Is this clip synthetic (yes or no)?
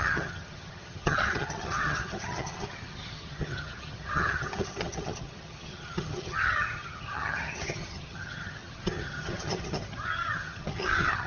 yes